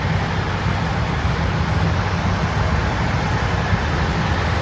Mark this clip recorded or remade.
recorded